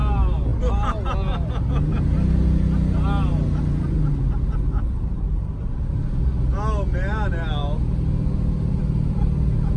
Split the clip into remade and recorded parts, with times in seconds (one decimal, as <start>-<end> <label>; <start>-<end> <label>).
0.0-9.8 recorded